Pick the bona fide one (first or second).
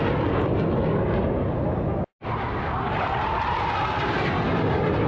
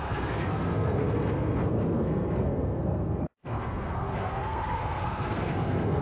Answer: first